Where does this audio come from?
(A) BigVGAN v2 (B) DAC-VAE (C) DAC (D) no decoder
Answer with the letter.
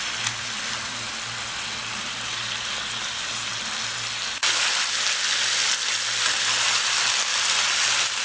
D